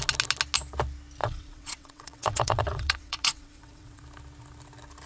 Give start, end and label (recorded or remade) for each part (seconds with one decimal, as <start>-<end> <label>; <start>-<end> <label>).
0.0-1.2 recorded; 1.2-4.0 remade; 4.0-5.1 recorded